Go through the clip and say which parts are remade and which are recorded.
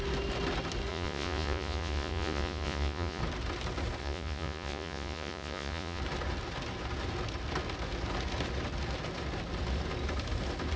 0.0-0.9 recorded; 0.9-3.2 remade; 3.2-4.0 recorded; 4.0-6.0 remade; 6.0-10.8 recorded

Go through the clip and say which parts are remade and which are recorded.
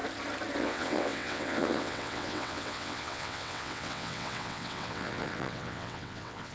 0.0-0.6 recorded; 0.6-6.5 remade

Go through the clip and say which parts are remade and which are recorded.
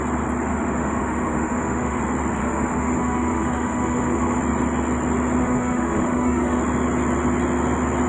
0.0-0.5 recorded; 0.5-2.0 remade; 2.0-2.4 recorded; 2.4-4.4 remade; 4.4-5.4 recorded; 5.4-6.6 remade; 6.6-8.1 recorded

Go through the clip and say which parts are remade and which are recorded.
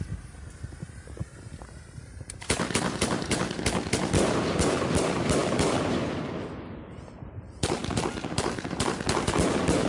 0.0-1.2 recorded; 1.2-3.4 remade; 3.4-9.9 recorded